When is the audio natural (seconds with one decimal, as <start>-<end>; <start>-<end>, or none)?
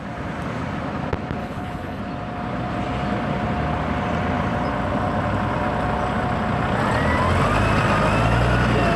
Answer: 0.0-1.4; 2.0-9.0